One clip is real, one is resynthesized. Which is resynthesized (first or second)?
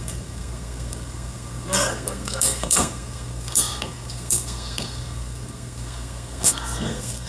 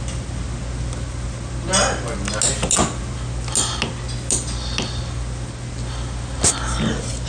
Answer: first